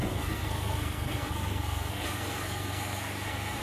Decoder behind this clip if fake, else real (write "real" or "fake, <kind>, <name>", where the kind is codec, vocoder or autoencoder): fake, codec, SNAC